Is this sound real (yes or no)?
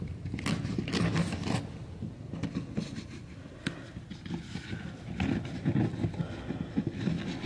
yes